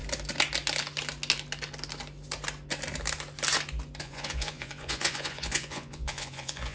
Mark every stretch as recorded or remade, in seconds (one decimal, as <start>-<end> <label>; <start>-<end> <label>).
0.0-4.0 recorded; 4.0-6.7 remade